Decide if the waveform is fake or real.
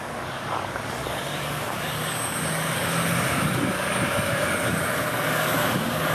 fake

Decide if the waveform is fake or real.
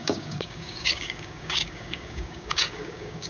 fake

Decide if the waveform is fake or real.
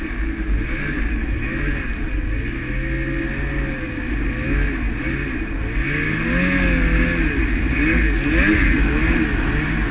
real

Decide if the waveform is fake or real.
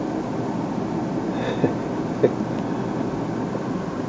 real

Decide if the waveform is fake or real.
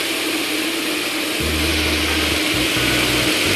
real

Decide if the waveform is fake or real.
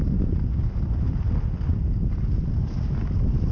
real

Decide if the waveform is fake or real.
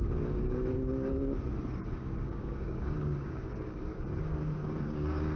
fake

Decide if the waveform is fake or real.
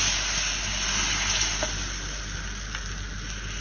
real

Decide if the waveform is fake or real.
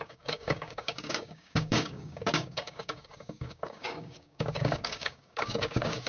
fake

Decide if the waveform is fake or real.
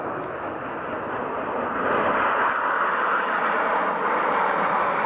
real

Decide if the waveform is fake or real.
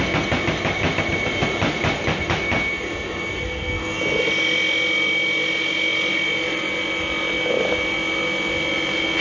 real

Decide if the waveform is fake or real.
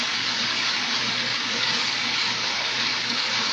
fake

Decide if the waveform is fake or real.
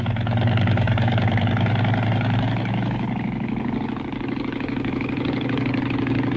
fake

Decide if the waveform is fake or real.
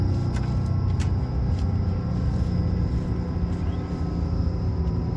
real